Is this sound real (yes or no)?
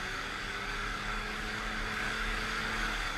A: no